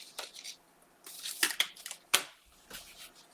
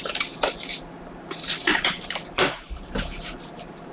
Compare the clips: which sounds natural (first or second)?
first